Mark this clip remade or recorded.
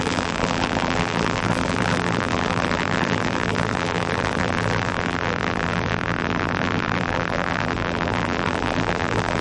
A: remade